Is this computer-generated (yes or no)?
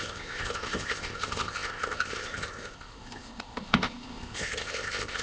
yes